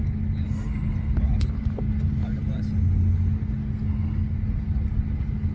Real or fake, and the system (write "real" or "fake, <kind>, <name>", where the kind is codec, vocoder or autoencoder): real